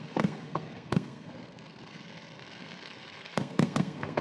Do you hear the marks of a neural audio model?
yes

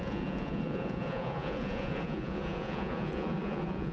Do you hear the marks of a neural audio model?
yes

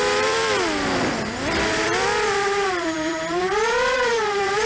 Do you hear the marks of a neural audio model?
yes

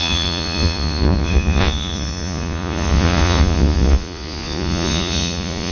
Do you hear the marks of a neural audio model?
yes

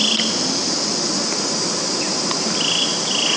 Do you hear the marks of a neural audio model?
no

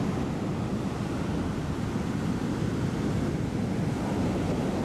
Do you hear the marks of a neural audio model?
no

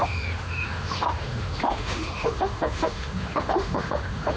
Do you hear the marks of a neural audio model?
yes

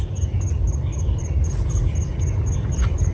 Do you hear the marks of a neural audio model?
no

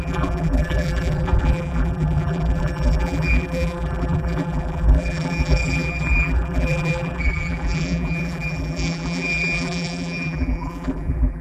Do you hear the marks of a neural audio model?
yes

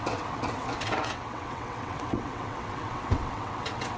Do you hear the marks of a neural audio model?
yes